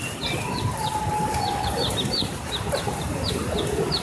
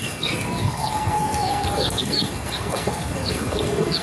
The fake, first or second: second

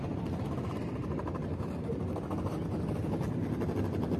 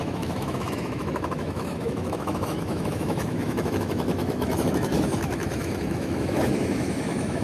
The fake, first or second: second